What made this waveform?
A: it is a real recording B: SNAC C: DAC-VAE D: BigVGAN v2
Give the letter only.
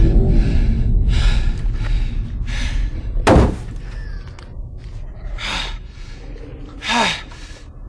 A